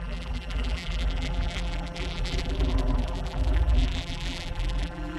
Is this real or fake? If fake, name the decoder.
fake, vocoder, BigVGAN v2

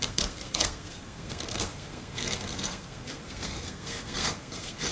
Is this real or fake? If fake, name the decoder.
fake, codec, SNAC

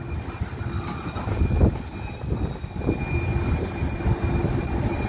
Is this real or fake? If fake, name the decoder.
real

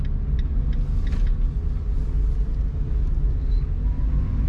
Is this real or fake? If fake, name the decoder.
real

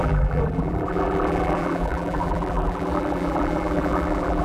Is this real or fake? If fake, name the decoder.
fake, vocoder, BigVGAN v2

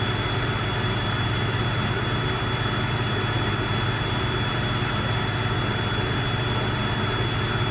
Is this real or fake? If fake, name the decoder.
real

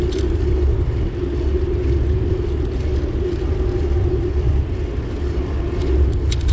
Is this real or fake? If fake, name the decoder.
real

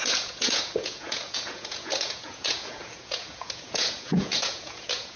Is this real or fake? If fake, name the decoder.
fake, vocoder, Vocos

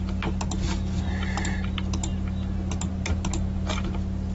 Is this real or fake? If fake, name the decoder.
real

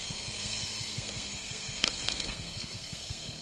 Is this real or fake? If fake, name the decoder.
fake, codec, SNAC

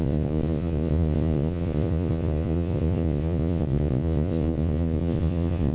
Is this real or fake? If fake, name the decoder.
fake, vocoder, Vocos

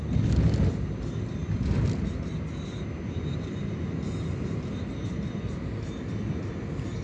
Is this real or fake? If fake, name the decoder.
real